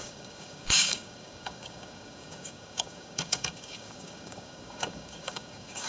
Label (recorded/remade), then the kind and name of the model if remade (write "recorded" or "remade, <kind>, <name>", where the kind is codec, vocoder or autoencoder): remade, codec, DAC